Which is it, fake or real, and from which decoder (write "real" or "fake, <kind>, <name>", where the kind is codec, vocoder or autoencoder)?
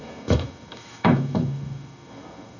fake, autoencoder, DAC-VAE